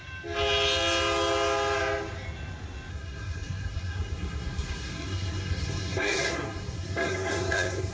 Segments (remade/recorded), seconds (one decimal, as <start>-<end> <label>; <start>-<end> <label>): 0.0-2.9 recorded; 2.9-7.9 remade